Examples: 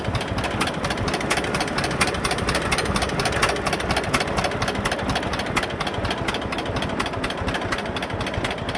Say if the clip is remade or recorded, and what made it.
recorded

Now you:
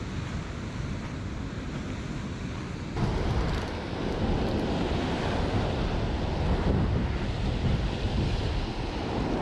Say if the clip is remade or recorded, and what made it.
recorded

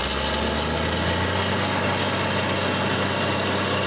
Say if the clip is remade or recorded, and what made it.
recorded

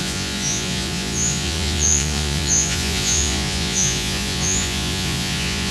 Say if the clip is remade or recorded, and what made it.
remade, vocoder, Vocos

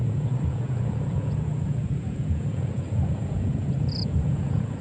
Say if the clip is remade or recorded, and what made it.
remade, vocoder, Vocos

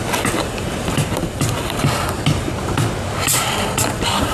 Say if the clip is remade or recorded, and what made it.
recorded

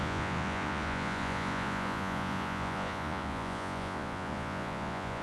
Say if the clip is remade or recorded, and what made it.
remade, vocoder, Vocos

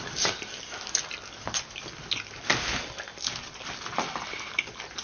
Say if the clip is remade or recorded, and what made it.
recorded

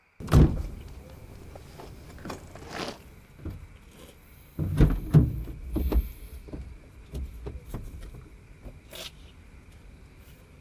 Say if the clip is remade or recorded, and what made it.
recorded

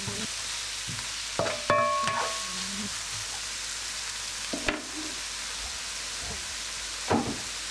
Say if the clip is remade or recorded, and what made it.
recorded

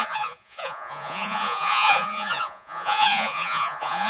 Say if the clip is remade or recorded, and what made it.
remade, vocoder, Vocos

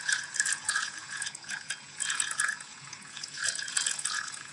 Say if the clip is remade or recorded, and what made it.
remade, vocoder, Vocos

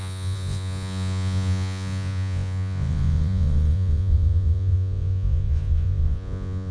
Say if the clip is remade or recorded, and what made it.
remade, vocoder, Vocos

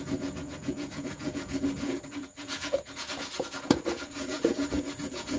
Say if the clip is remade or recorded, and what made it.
remade, vocoder, Vocos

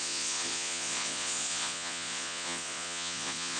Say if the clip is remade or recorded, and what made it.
remade, vocoder, Vocos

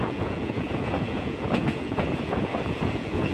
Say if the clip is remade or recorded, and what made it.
remade, vocoder, Vocos